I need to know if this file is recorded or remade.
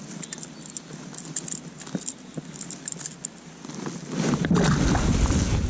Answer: recorded